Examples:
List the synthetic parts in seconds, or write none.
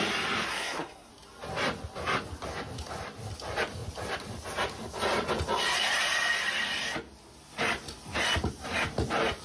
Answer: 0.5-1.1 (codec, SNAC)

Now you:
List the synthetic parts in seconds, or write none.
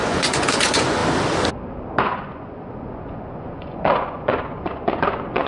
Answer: 0.0-1.0 (vocoder, Vocos); 2.0-5.5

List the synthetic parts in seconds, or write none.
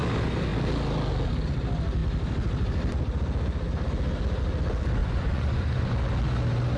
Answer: 5.0-5.9 (vocoder, Vocos)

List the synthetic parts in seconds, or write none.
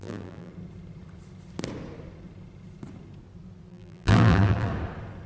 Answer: 0.0-0.5 (vocoder, BigVGAN v2); 3.7-4.7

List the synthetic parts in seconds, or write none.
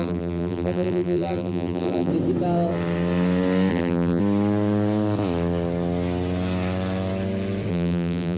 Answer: 0.0-2.1 (vocoder, BigVGAN v2); 3.7-4.2; 7.7-8.4